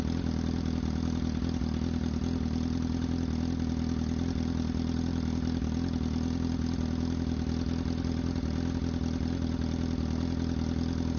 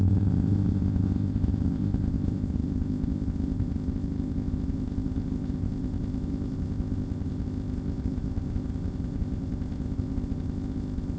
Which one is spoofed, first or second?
second